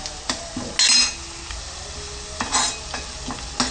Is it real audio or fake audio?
real